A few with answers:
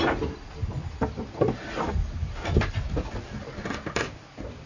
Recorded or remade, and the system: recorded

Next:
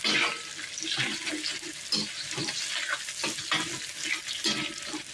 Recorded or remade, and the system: recorded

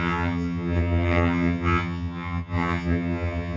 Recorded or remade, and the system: remade, vocoder, HiFi-GAN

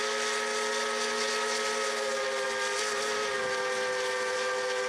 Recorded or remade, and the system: recorded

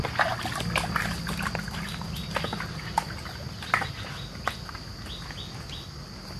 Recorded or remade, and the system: recorded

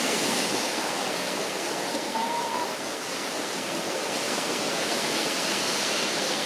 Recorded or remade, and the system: remade, codec, SNAC